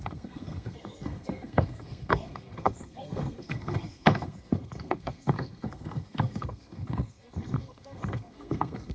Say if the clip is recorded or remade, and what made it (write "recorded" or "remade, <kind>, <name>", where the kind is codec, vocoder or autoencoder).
remade, codec, SNAC